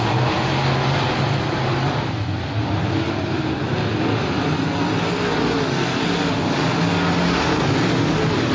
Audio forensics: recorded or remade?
recorded